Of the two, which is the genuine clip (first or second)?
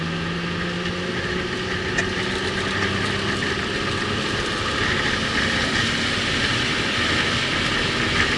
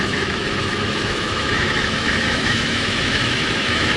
first